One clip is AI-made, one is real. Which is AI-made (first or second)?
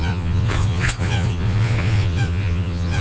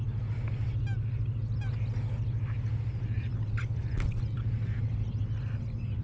first